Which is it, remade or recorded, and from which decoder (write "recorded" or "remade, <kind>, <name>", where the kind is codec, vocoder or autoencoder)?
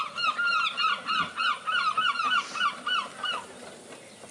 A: recorded